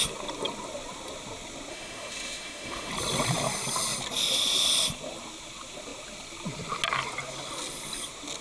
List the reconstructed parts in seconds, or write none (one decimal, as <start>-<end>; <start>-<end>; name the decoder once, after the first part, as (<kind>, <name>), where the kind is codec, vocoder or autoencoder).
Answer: 1.7-2.9 (autoencoder, DAC-VAE)